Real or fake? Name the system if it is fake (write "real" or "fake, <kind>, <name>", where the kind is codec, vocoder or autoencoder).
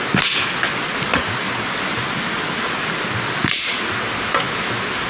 real